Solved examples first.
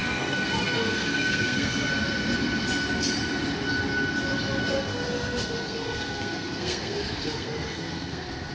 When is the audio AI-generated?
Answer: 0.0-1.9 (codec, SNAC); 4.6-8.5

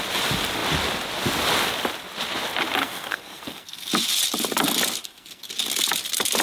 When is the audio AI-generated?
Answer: 2.8-3.9 (codec, SNAC); 5.0-5.5